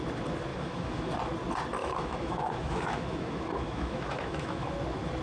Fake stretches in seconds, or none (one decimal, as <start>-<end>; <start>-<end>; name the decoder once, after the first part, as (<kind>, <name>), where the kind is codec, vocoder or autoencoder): 0.5-1.1 (autoencoder, DAC-VAE); 1.8-4.7